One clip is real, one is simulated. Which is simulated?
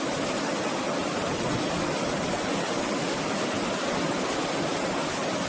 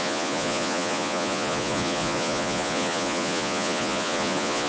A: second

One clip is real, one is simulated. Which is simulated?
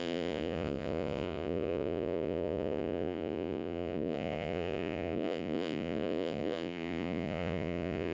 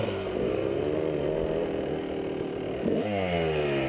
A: first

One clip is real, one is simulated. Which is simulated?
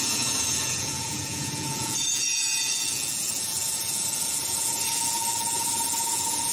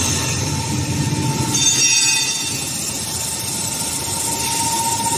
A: first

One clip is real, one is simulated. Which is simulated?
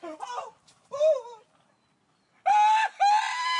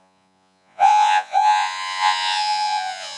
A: second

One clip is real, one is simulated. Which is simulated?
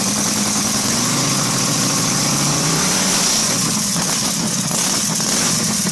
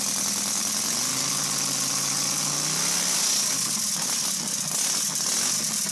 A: first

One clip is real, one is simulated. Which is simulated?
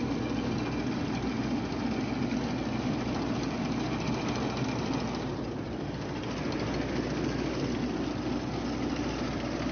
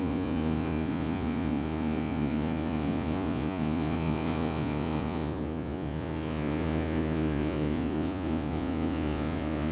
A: second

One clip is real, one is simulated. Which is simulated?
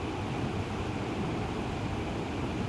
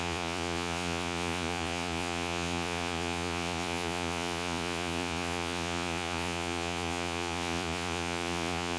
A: second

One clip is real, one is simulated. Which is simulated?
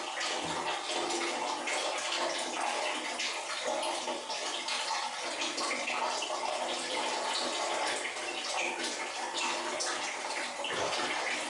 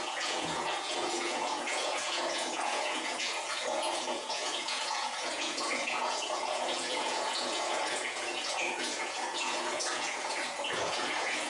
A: second